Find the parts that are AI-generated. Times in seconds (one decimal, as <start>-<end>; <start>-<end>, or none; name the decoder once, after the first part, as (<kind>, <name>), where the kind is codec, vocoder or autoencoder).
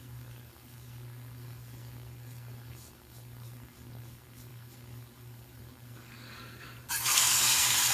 0.0-7.9 (codec, SNAC)